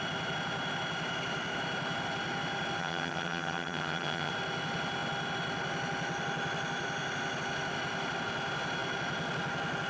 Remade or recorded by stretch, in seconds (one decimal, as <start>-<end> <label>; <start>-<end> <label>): 0.0-2.8 recorded; 2.8-4.3 remade; 4.3-9.9 recorded